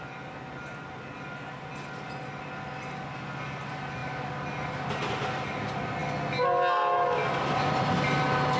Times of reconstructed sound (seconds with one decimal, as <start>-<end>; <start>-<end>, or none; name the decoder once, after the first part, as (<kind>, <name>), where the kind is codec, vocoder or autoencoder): none

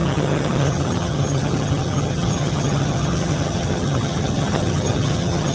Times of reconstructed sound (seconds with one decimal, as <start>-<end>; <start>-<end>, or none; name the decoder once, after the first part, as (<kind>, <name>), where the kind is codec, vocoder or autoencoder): 0.0-5.5 (vocoder, HiFi-GAN)